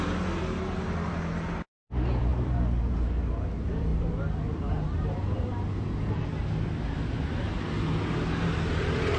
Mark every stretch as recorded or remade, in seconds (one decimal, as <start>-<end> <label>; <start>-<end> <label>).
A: 0.0-2.3 recorded; 2.3-2.8 remade; 2.8-9.2 recorded